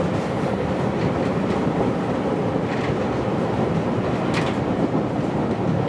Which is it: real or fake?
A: real